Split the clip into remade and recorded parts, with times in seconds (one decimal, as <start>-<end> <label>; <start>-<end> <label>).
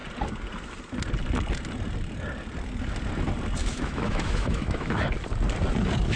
0.0-3.6 recorded; 3.6-5.0 remade; 5.0-6.2 recorded